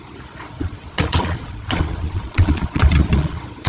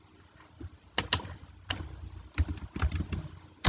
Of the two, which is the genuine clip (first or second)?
second